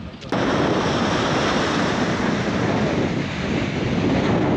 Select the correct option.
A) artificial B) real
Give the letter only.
B